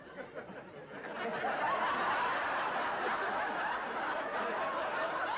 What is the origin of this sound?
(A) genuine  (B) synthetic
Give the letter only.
A